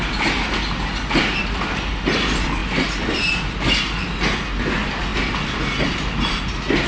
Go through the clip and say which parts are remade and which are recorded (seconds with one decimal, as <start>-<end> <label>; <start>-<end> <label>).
0.0-6.9 recorded